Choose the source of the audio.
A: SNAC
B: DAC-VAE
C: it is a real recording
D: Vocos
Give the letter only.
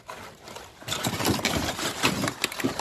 C